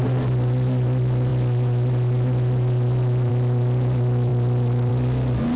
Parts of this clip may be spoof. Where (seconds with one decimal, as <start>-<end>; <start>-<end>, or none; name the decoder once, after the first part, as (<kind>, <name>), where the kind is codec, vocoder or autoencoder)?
none

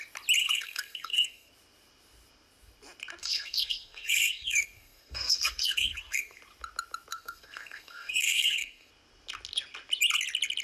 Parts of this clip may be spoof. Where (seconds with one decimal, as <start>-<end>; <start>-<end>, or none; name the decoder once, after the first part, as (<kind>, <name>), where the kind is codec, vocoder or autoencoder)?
0.4-1.5 (codec, SNAC); 3.2-6.4; 7.1-8.9

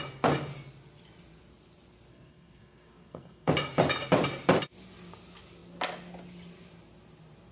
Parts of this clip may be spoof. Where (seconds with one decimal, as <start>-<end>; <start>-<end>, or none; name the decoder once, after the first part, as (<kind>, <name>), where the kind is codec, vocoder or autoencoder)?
2.1-3.5 (codec, SNAC)

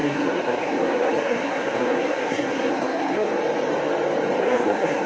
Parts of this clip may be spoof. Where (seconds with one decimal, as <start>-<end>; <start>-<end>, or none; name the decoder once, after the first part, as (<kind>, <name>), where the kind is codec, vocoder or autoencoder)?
0.0-3.3 (codec, SNAC); 4.4-5.1